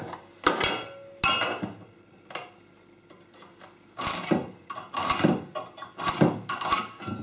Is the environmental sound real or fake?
real